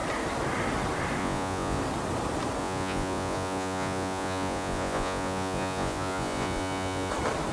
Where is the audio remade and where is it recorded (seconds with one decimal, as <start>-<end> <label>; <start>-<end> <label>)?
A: 0.0-1.2 recorded; 1.2-1.8 remade; 1.8-2.6 recorded; 2.6-7.1 remade; 7.1-7.5 recorded